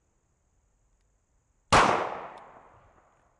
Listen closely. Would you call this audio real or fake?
real